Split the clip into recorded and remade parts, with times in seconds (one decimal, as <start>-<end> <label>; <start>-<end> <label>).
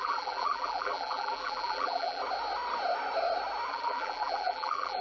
0.0-2.2 remade; 2.2-3.7 recorded; 3.7-5.0 remade